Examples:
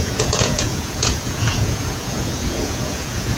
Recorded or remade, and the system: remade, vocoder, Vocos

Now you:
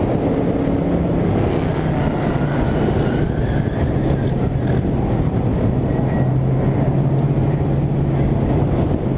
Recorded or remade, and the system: recorded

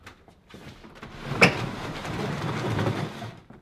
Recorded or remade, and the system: recorded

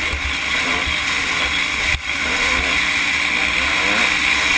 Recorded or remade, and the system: recorded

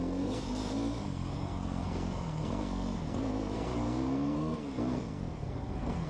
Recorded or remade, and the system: remade, codec, SNAC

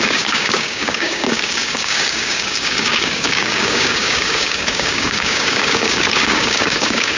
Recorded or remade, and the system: remade, codec, DAC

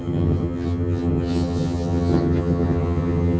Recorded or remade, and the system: remade, vocoder, HiFi-GAN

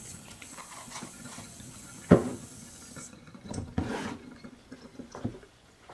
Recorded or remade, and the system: remade, vocoder, Vocos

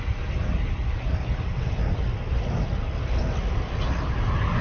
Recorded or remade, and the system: recorded